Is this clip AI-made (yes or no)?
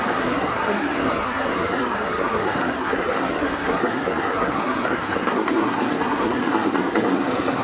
yes